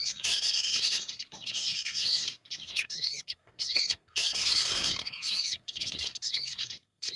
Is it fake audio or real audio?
fake